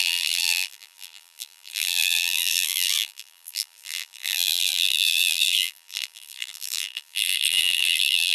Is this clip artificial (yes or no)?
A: yes